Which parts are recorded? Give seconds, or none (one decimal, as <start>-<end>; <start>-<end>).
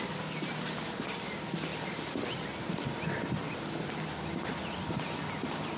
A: 0.0-5.8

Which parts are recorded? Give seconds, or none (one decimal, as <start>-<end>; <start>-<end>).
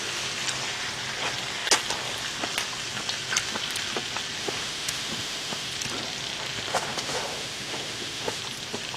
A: 0.0-4.4; 5.7-6.7; 8.4-9.0